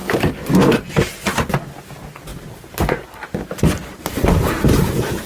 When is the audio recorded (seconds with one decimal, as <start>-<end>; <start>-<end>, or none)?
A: 1.1-2.3